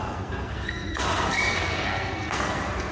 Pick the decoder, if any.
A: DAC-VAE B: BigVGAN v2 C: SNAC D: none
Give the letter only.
C